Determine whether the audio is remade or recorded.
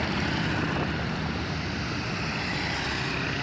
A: recorded